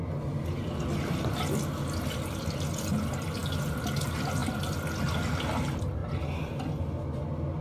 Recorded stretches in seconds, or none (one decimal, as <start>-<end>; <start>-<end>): 0.0-7.6